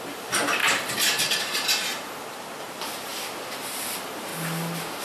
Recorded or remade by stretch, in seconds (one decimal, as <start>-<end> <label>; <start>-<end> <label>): 0.0-4.3 remade; 4.3-5.0 recorded